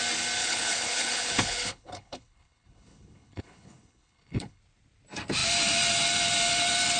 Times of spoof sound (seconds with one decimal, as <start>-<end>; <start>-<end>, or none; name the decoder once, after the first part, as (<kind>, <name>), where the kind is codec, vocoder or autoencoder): 0.4-4.6 (codec, HILCodec)